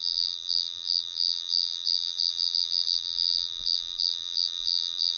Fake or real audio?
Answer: fake